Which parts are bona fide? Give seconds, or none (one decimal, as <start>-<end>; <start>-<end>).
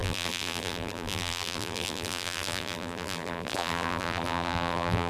none